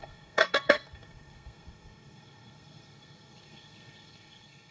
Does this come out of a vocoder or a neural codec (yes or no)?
yes